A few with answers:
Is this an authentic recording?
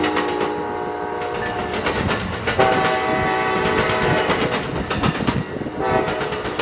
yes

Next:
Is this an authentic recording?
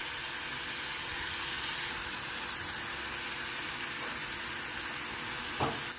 yes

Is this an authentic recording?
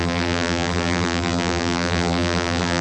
no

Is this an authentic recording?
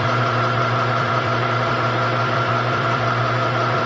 no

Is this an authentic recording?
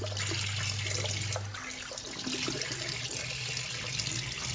yes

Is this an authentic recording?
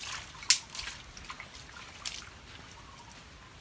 yes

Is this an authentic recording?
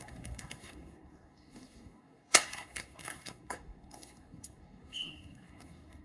no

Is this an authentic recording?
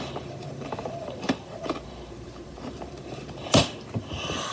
no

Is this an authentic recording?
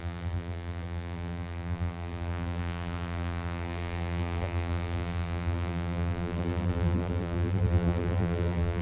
no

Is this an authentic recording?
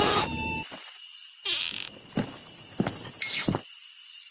yes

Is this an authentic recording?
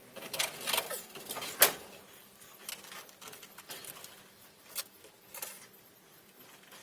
yes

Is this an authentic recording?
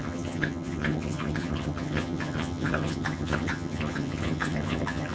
no